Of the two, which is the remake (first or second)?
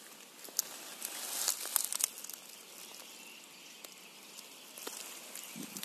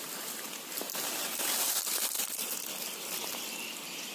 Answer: second